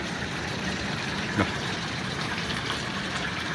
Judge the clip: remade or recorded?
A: remade